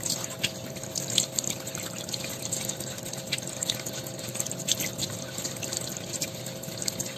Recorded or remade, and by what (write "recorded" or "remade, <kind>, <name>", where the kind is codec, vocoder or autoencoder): recorded